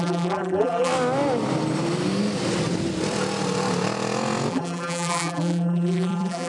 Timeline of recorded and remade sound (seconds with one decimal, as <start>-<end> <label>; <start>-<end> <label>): 0.0-0.9 remade; 0.9-4.5 recorded; 4.5-6.5 remade